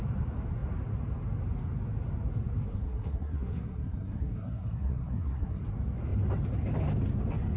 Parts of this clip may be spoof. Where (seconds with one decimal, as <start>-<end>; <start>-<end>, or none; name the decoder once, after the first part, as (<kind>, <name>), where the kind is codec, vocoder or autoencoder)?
2.7-5.6 (codec, SNAC)